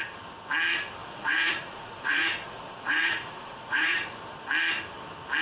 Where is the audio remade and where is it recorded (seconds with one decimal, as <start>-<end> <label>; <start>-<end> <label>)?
0.0-1.0 recorded; 1.0-4.2 remade; 4.2-5.4 recorded